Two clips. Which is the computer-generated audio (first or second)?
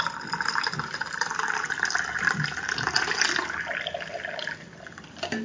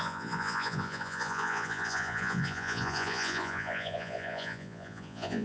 second